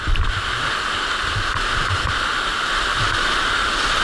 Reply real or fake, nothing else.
fake